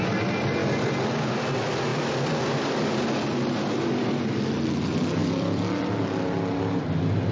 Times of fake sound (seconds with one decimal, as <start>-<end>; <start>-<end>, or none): 0.6-1.4; 1.9-2.9; 5.2-5.9